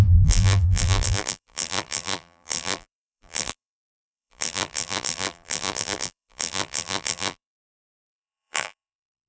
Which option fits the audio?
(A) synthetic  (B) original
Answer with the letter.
A